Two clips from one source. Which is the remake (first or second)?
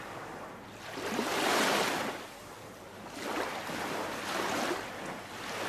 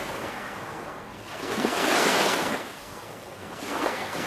second